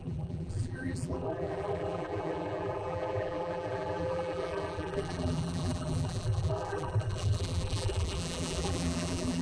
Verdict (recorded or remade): remade